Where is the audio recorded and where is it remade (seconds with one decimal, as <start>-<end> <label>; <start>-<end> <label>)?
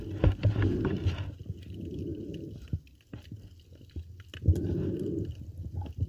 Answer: 0.0-6.1 recorded